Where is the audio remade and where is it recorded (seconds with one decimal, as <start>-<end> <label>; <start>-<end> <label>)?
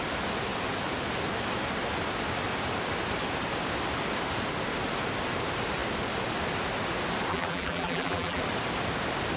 0.0-7.3 recorded; 7.3-8.4 remade; 8.4-9.4 recorded